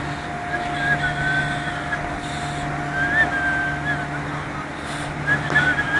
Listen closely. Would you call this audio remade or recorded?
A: recorded